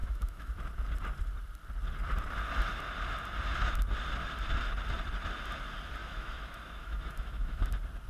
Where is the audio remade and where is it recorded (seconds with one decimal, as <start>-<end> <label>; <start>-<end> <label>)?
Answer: 0.0-0.5 remade; 0.5-6.0 recorded; 6.0-7.6 remade; 7.6-8.1 recorded